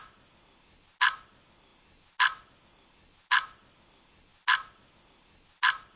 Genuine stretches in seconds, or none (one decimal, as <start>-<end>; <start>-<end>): 0.0-6.0